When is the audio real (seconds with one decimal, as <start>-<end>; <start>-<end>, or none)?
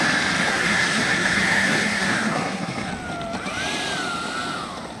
0.0-0.5; 2.9-5.0